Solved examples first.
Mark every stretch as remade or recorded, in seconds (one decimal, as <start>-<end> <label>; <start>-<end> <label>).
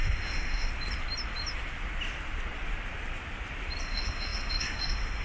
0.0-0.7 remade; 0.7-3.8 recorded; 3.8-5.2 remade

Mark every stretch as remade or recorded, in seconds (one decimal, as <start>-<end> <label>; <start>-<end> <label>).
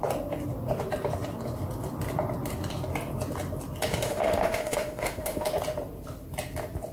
0.0-3.9 recorded; 3.9-5.5 remade; 5.5-6.9 recorded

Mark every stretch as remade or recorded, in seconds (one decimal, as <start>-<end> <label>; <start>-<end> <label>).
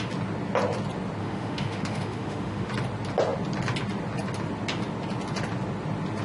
0.0-1.2 recorded; 1.2-2.7 remade; 2.7-6.2 recorded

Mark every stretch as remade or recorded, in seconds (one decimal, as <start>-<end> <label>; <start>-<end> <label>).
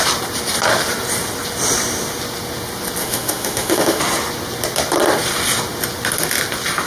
0.0-3.0 recorded; 3.0-4.0 remade; 4.0-6.9 recorded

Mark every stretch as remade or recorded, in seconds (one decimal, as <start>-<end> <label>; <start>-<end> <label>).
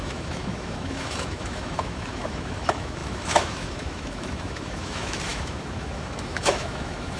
0.0-7.2 remade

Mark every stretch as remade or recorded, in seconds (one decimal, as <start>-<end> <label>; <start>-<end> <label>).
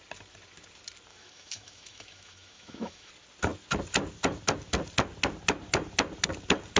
0.0-1.1 recorded; 1.1-3.1 remade; 3.1-6.8 recorded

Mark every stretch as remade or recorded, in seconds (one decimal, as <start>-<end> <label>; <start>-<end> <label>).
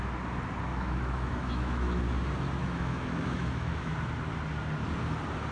0.0-0.7 recorded; 0.7-2.0 remade; 2.0-2.6 recorded; 2.6-3.9 remade; 3.9-5.5 recorded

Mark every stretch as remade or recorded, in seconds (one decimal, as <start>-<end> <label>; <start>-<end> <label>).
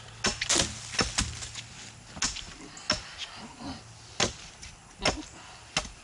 0.0-6.0 recorded